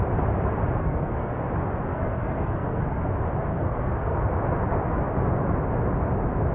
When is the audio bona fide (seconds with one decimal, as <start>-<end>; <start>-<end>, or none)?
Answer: 0.0-0.8; 1.3-1.9; 3.1-3.5; 4.2-6.5